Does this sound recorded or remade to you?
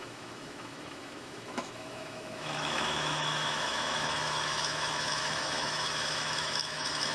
remade